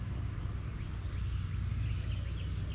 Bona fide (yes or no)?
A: yes